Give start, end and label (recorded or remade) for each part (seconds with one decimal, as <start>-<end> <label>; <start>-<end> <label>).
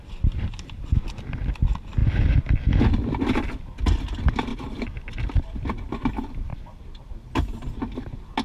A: 0.0-4.5 recorded; 4.5-5.9 remade; 5.9-6.5 recorded; 6.5-7.0 remade; 7.0-8.4 recorded